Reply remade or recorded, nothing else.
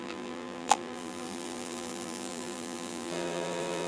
remade